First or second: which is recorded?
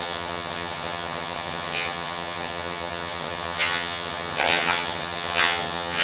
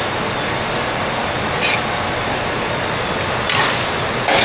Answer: second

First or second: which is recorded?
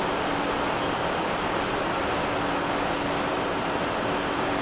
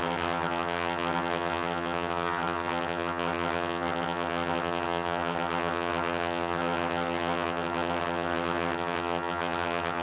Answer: first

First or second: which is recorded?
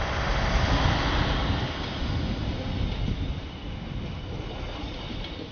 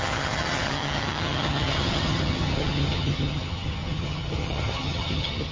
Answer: first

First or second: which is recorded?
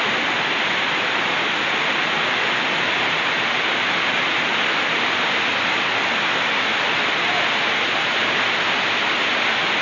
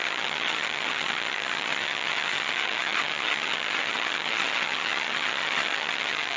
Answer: first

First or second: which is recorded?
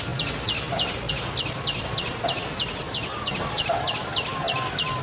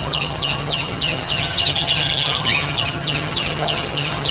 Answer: first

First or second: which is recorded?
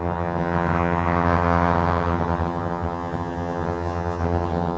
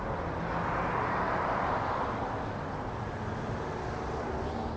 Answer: second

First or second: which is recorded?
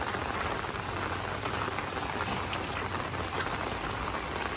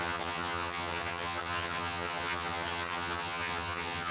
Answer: first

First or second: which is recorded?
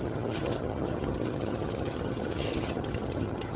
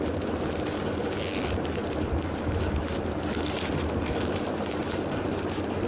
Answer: second